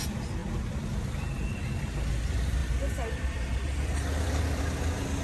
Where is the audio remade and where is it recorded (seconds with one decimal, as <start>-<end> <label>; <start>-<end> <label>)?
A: 0.0-2.6 recorded; 2.6-4.6 remade; 4.6-5.2 recorded